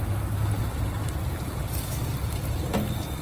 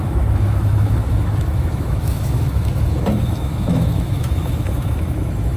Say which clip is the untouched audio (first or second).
first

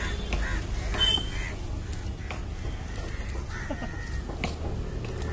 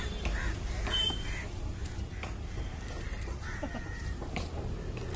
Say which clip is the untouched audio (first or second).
first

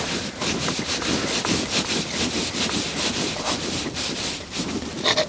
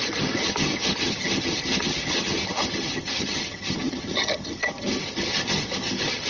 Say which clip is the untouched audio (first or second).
first